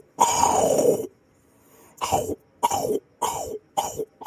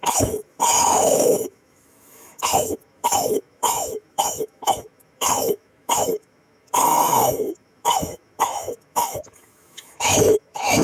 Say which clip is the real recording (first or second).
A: first